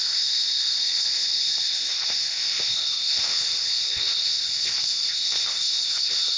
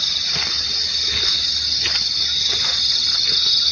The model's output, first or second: first